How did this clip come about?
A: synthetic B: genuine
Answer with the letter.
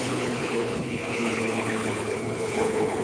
A